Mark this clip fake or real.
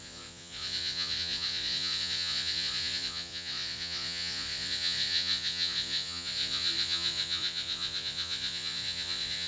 fake